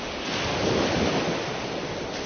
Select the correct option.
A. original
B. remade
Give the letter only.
A